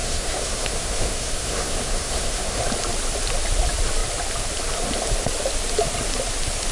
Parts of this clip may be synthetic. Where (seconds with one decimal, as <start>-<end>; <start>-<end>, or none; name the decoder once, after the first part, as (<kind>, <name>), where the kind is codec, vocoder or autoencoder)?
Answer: 0.0-2.6 (codec, SNAC)